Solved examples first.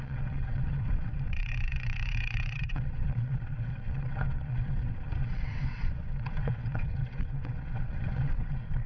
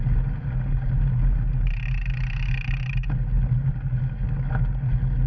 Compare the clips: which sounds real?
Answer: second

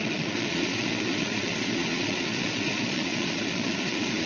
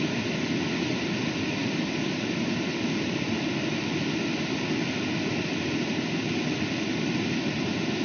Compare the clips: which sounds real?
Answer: second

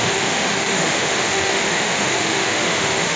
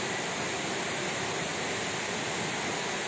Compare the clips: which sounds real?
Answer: second